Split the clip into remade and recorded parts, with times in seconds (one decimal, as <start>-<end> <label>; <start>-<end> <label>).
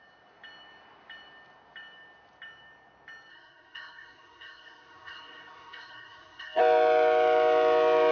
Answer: 0.0-3.3 recorded; 3.3-6.6 remade; 6.6-8.1 recorded